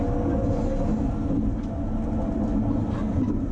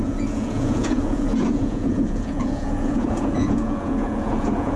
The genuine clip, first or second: first